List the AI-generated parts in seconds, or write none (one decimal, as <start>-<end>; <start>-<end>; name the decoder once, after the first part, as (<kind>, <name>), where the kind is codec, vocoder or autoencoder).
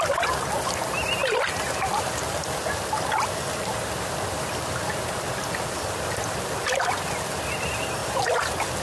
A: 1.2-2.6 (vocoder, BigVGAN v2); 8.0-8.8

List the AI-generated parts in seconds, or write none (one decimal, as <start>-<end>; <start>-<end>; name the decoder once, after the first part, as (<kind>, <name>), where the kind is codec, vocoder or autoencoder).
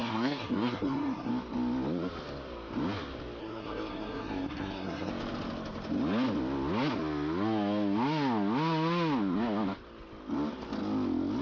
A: 0.0-1.3 (codec, SNAC); 3.4-5.1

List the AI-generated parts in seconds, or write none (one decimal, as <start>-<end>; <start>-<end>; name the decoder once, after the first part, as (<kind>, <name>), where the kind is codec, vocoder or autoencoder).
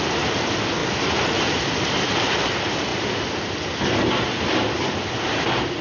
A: 0.8-1.6 (vocoder, BigVGAN v2)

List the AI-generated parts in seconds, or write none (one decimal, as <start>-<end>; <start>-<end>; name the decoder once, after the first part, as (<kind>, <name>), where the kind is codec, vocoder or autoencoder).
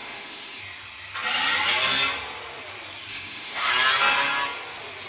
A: 0.0-0.6 (autoencoder, DAC-VAE); 3.1-3.7